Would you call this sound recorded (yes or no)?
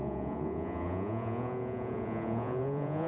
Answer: no